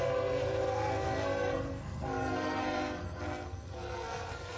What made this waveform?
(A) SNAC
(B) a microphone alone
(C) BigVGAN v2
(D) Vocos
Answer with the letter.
A